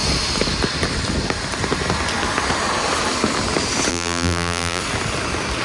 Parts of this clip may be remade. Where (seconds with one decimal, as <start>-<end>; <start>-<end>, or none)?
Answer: 3.9-4.8